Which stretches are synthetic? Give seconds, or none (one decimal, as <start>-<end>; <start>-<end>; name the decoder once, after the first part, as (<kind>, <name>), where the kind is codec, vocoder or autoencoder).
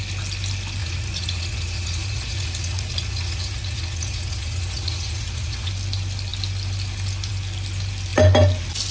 0.8-5.7 (vocoder, Vocos)